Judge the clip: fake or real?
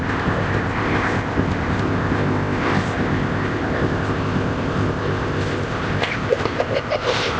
fake